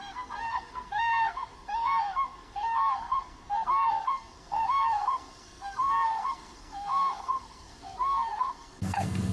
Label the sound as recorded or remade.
remade